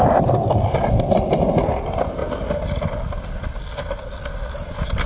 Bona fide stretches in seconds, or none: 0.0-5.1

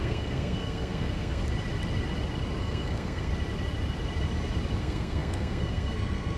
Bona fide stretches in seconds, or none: 1.4-2.6; 3.3-4.8